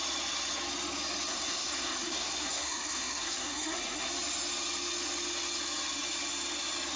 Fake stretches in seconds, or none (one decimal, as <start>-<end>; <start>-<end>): 1.3-4.1